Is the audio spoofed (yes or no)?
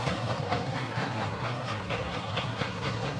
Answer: yes